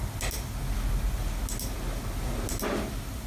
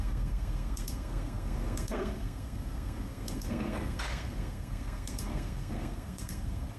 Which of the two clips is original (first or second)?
first